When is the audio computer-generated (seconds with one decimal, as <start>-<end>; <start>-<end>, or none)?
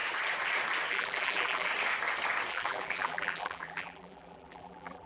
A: 0.9-1.7; 2.5-5.1